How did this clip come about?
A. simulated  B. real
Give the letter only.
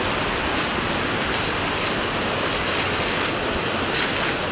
B